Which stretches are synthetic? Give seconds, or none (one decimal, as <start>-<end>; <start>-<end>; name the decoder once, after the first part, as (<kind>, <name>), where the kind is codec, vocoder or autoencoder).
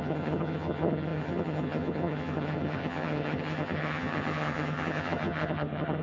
0.0-6.0 (vocoder, HiFi-GAN)